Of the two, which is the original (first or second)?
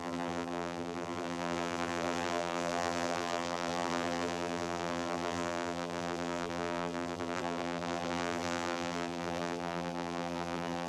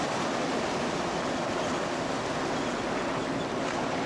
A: second